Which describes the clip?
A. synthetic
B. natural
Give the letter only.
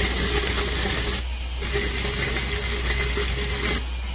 B